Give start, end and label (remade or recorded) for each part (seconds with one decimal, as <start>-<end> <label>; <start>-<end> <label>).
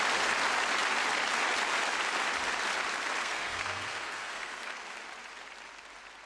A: 0.0-3.2 recorded; 3.2-4.8 remade; 4.8-6.3 recorded